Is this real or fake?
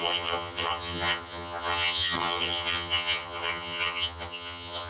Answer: fake